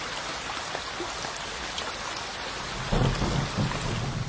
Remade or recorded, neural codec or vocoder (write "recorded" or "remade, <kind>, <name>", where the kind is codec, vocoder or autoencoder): recorded